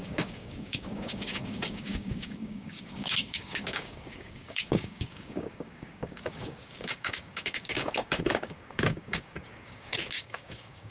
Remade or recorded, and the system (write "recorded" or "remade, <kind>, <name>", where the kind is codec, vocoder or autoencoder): remade, codec, DAC